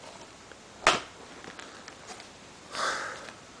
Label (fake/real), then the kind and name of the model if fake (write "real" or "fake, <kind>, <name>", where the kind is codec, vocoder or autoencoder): real